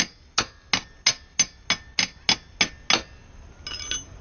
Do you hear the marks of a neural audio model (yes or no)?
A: no